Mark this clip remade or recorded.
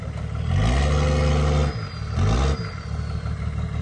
recorded